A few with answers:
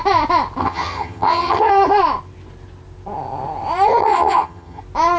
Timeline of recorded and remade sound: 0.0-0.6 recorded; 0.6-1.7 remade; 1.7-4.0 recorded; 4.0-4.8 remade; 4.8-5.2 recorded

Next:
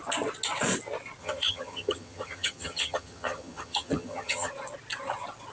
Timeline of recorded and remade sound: 0.0-1.2 recorded; 1.2-4.5 remade; 4.5-5.5 recorded